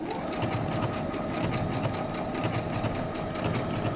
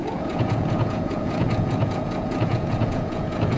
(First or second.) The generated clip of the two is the second